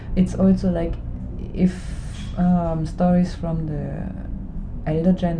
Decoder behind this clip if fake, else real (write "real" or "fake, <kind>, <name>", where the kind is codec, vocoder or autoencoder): real